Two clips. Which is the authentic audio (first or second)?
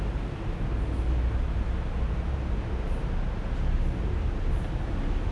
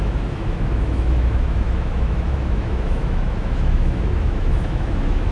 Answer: first